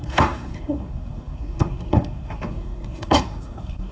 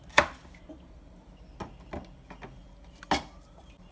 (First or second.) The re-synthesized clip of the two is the first